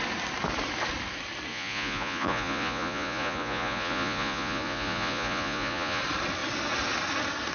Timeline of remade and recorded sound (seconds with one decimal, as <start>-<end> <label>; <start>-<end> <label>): 0.0-1.5 recorded; 1.5-6.0 remade; 6.0-7.5 recorded